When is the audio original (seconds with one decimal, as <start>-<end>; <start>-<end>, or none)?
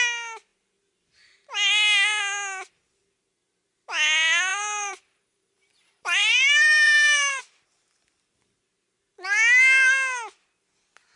0.0-4.5; 7.4-11.2